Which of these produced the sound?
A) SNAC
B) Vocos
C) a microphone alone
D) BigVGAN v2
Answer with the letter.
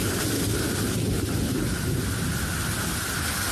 C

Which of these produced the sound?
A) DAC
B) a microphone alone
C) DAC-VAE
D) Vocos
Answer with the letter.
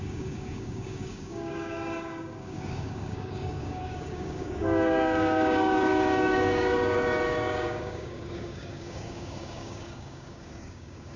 A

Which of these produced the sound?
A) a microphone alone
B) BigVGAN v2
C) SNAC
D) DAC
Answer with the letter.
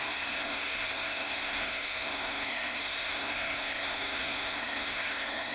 C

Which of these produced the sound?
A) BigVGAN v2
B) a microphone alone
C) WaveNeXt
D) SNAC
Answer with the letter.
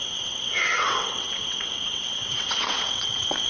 C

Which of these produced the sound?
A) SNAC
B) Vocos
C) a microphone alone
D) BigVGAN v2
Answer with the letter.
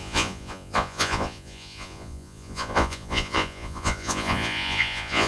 B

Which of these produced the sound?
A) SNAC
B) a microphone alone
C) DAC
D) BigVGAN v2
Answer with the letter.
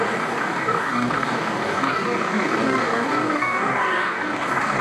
C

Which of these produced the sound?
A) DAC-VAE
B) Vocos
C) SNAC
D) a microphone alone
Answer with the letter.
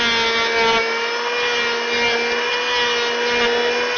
D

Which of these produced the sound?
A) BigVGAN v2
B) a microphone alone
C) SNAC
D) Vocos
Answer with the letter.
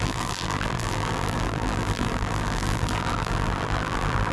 A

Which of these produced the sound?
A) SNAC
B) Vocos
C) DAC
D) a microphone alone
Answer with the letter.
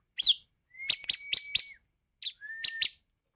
D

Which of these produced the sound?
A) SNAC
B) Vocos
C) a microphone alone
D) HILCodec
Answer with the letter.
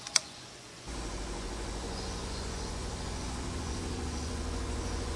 B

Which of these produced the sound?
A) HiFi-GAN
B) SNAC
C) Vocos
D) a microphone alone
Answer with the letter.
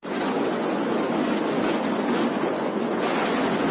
C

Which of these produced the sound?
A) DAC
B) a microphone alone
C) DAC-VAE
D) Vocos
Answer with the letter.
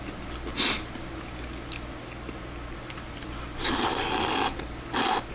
B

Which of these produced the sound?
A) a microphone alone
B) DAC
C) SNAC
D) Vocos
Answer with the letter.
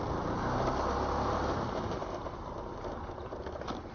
A